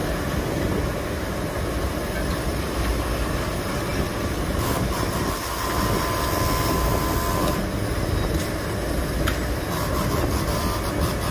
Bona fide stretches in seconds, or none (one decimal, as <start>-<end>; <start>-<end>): 0.0-11.3

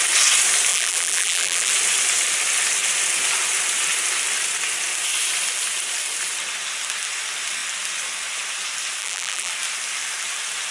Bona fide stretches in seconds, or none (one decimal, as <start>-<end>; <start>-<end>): 0.0-0.7; 1.7-9.0; 9.5-10.7

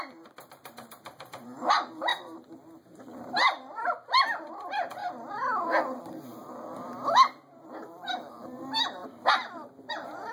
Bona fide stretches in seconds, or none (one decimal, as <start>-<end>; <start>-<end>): 5.0-8.3; 9.0-9.9

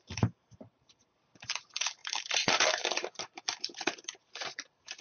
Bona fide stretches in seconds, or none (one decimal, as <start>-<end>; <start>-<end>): none

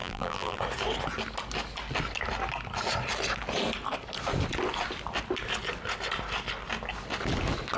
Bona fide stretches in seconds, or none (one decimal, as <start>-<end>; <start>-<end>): 0.6-7.8

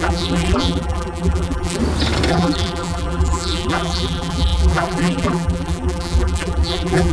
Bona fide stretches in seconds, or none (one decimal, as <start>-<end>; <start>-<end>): 1.8-2.3